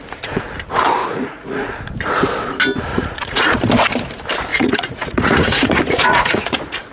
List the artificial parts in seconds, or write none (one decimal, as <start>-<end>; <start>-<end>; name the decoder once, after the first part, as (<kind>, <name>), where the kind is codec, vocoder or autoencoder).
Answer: 1.0-1.7 (vocoder, Vocos); 2.9-3.6; 4.5-6.9